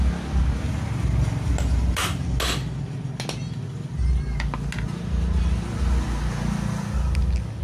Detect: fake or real real